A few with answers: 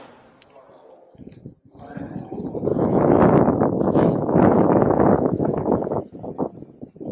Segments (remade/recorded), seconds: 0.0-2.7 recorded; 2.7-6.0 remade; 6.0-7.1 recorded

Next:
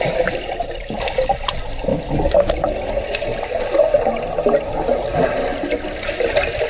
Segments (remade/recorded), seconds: 0.0-1.9 recorded; 1.9-2.5 remade; 2.5-6.7 recorded

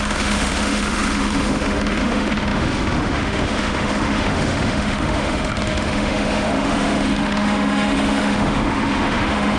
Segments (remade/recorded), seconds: 0.0-9.6 remade

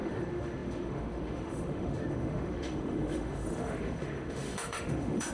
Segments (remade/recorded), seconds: 0.0-5.3 remade

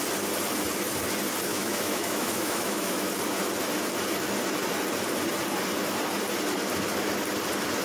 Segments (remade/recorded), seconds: 0.0-1.5 recorded; 1.5-3.1 remade; 3.1-7.8 recorded

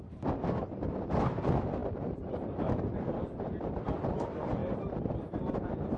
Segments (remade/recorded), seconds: 0.0-6.0 recorded

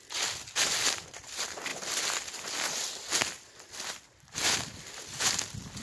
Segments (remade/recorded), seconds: 0.0-5.8 recorded